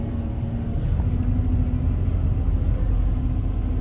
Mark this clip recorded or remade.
recorded